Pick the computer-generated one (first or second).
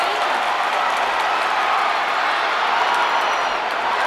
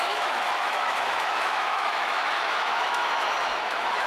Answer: second